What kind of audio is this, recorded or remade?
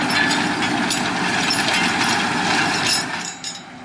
recorded